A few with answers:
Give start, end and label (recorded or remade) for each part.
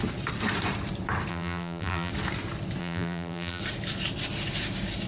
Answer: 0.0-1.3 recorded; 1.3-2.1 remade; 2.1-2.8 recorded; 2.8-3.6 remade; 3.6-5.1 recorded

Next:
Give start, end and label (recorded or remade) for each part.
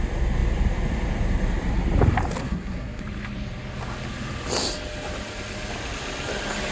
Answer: 0.0-2.4 recorded; 2.4-3.0 remade; 3.0-6.7 recorded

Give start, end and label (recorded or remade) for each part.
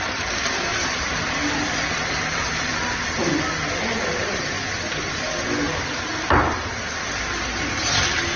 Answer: 0.0-0.7 recorded; 0.7-3.2 remade; 3.2-8.4 recorded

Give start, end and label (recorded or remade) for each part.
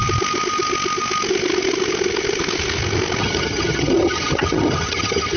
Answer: 0.0-3.2 recorded; 3.2-5.4 remade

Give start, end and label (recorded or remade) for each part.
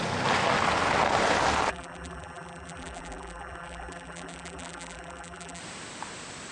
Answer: 0.0-1.7 recorded; 1.7-5.6 remade; 5.6-6.5 recorded